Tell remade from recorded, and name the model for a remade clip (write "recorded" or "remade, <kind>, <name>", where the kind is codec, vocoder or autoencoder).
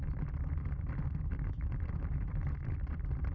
remade, vocoder, BigVGAN v2